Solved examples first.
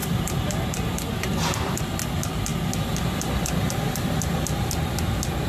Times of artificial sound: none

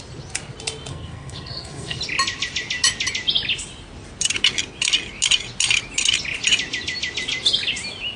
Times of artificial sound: 0.9-2.0 (codec, SNAC)

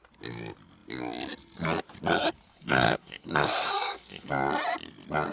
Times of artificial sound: 2.5-4.3 (codec, SNAC)

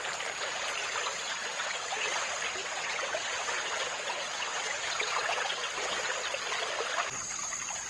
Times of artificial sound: 1.1-2.2 (vocoder, WaveNeXt); 2.6-6.1

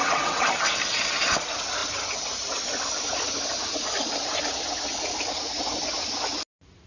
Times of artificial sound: 0.0-0.5 (vocoder, WaveNeXt)

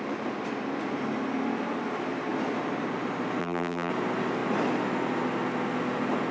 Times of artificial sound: 3.4-3.9 (vocoder, BigVGAN v2)